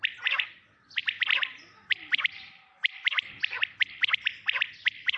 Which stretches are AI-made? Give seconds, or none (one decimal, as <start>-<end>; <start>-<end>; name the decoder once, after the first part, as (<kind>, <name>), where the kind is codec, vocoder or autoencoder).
1.0-4.1 (vocoder, BigVGAN v2)